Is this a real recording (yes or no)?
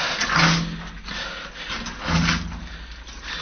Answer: yes